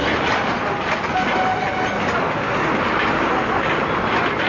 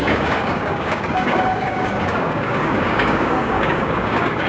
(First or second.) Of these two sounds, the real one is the first